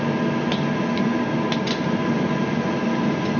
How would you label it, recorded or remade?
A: recorded